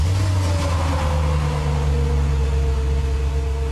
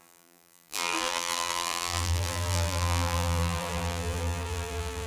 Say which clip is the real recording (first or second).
first